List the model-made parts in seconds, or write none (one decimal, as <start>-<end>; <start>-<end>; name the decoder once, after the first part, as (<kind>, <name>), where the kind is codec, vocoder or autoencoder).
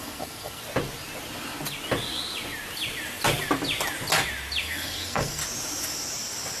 0.0-0.6 (codec, SNAC); 4.6-5.4